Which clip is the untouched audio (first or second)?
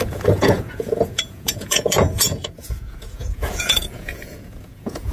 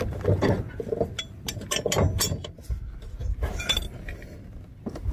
second